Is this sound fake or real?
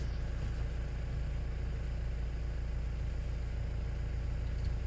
real